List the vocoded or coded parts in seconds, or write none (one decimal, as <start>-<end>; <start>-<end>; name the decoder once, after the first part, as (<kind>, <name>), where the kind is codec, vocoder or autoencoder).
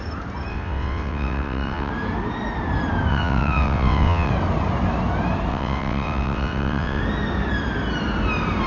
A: 0.5-1.9 (vocoder, WaveNeXt); 3.1-4.3; 5.5-7.0